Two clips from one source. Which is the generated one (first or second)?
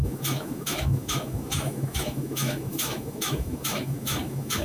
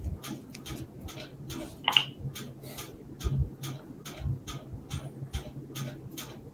first